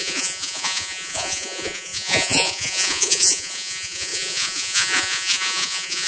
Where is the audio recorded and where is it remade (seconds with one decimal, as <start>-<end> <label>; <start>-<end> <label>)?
0.0-6.1 remade

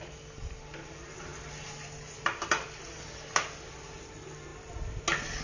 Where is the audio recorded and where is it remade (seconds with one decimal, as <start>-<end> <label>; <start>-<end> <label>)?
0.0-5.4 recorded

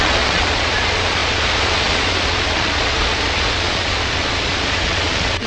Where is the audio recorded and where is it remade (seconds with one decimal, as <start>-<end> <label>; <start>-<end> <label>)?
0.0-5.5 remade

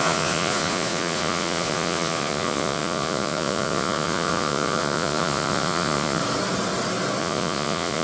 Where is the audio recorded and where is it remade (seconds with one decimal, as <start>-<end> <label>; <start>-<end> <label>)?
0.0-6.2 remade; 6.2-7.2 recorded; 7.2-8.0 remade

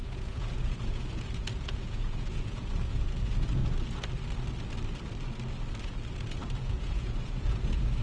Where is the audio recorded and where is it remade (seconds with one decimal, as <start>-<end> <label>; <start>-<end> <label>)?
0.0-3.6 remade; 3.6-5.8 recorded; 5.8-8.0 remade

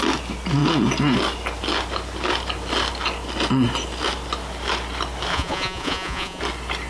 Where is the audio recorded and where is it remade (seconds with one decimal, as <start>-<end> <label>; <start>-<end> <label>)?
0.0-5.3 recorded; 5.3-6.4 remade; 6.4-6.9 recorded